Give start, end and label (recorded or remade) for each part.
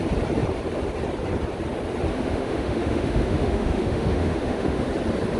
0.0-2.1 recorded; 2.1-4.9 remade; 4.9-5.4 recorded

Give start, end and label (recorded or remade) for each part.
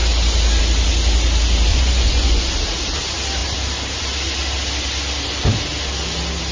0.0-1.7 recorded; 1.7-2.5 remade; 2.5-6.5 recorded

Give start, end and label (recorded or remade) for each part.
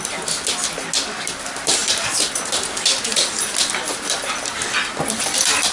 0.0-5.7 recorded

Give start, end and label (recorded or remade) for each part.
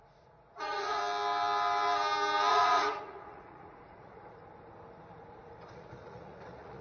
0.0-1.0 remade; 1.0-2.5 recorded; 2.5-4.4 remade; 4.4-5.7 recorded; 5.7-6.8 remade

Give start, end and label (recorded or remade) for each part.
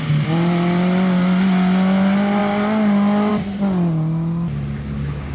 0.0-5.3 recorded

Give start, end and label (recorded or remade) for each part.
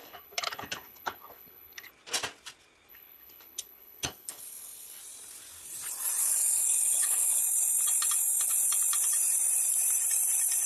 0.0-1.9 remade; 1.9-2.9 recorded; 2.9-5.0 remade; 5.0-6.2 recorded; 6.2-7.4 remade; 7.4-10.7 recorded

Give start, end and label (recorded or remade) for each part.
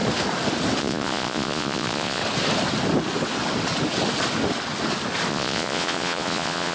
0.0-0.8 recorded; 0.8-2.2 remade; 2.2-5.3 recorded; 5.3-6.7 remade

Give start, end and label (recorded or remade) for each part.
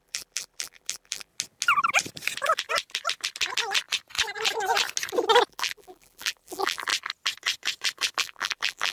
0.0-1.3 remade; 1.3-5.5 recorded; 5.5-6.9 remade; 6.9-8.2 recorded; 8.2-8.9 remade